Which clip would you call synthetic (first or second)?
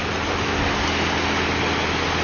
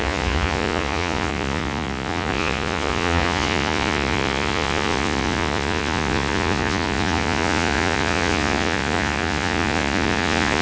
second